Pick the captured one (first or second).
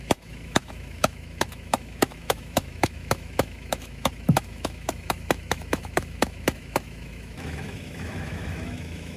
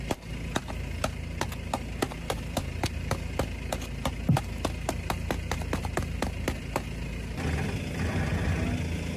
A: second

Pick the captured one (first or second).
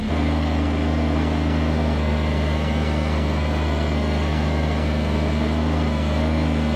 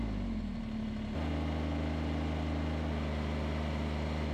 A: second